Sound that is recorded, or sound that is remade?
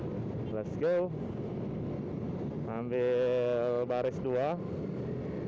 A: recorded